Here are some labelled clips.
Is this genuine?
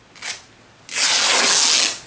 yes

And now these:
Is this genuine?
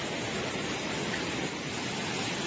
yes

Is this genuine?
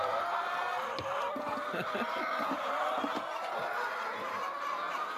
yes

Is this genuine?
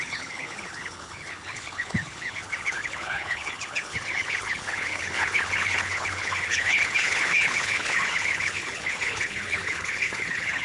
no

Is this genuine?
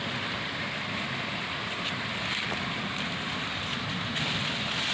yes